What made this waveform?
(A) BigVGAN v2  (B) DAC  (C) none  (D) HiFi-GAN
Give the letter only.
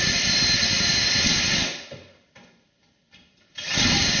A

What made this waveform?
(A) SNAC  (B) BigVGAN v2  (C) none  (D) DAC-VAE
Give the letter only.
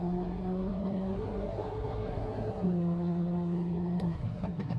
A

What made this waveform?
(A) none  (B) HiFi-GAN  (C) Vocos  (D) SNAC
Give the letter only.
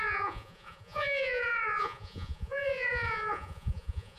C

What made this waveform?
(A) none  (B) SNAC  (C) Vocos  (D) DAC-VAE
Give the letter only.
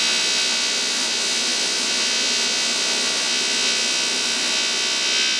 A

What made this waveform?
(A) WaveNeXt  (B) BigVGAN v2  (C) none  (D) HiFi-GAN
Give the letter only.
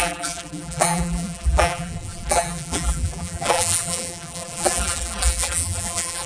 B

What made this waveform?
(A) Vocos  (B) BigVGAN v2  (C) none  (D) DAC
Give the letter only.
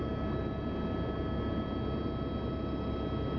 C